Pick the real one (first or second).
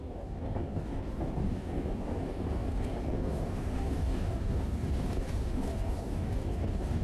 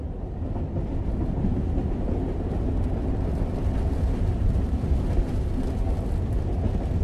second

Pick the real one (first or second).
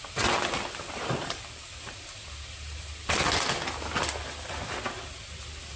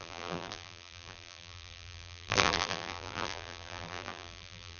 first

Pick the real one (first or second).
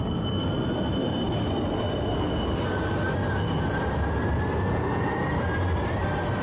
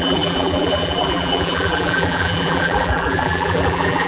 first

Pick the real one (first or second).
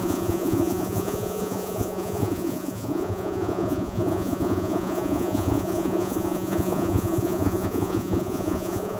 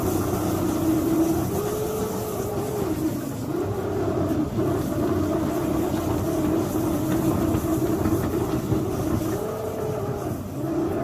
second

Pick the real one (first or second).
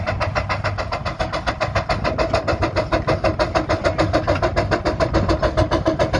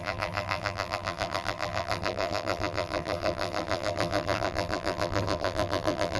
first